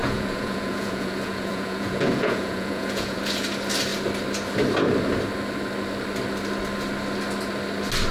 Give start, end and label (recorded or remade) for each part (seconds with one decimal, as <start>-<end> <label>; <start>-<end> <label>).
0.0-3.2 remade; 3.2-8.1 recorded